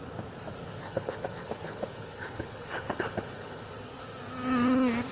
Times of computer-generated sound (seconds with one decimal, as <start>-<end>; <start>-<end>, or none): 0.6-3.7